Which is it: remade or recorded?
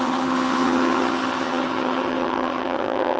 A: remade